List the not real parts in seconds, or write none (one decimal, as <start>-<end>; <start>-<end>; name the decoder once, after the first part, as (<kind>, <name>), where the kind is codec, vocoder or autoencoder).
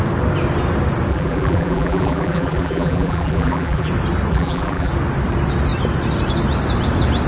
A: 1.1-3.9 (vocoder, BigVGAN v2); 4.3-4.9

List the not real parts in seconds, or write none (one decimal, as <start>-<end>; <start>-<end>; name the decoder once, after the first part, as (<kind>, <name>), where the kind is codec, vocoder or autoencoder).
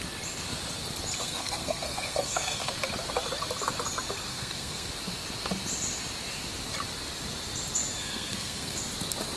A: 1.2-2.7 (codec, SNAC); 4.3-4.9; 8.0-8.8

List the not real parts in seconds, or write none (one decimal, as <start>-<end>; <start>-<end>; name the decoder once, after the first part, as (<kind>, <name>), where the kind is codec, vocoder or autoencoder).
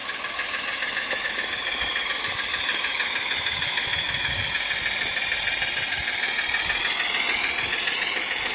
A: 0.0-4.4 (autoencoder, DAC-VAE)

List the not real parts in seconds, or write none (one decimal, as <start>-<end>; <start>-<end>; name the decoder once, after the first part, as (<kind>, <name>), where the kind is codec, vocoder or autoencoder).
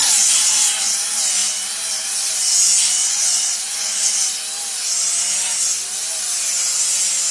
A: 0.0-0.9 (vocoder, Vocos); 3.0-4.1